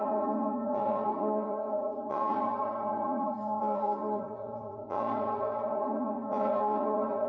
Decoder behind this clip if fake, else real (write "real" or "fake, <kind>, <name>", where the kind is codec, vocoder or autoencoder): fake, vocoder, Vocos